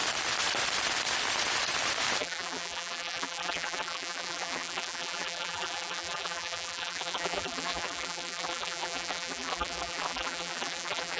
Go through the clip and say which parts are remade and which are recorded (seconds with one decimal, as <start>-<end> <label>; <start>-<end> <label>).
0.0-2.2 recorded; 2.2-11.2 remade